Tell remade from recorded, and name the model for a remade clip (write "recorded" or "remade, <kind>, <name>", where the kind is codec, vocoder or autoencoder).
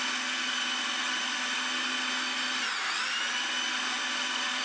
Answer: recorded